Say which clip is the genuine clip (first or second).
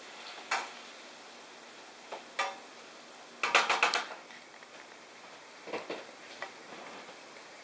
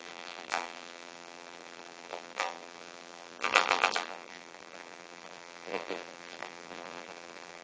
first